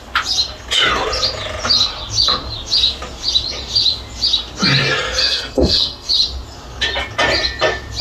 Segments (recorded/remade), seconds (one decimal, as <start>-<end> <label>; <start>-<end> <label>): 0.0-5.2 recorded; 5.2-6.1 remade; 6.1-8.0 recorded